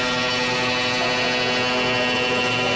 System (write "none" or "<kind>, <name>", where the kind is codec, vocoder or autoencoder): none